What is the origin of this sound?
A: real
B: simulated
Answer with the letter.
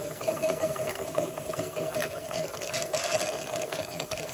B